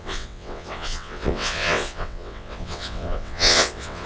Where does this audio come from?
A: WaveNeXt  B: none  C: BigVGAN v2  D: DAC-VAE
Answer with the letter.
A